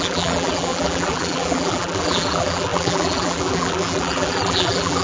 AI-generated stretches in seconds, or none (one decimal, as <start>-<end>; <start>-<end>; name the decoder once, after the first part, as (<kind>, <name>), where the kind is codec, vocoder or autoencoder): 0.0-5.0 (vocoder, BigVGAN v2)